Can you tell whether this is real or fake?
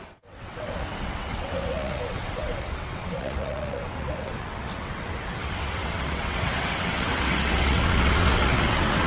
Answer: fake